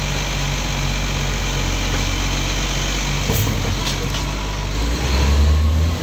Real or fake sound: real